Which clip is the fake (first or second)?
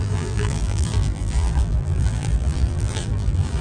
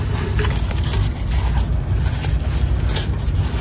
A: first